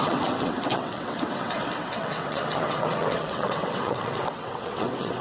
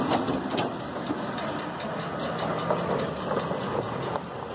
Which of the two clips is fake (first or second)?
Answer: first